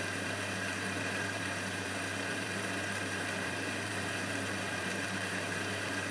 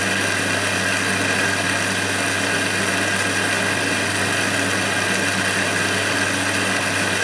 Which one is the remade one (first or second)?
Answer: first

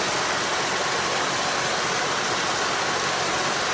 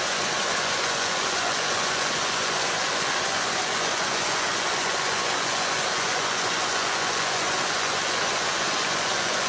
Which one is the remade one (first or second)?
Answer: second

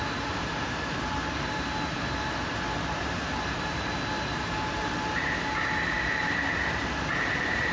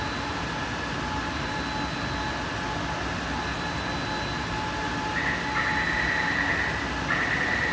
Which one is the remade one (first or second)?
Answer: first